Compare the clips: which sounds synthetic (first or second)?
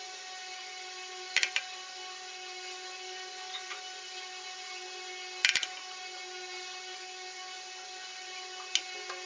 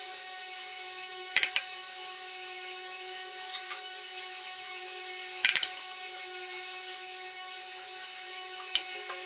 second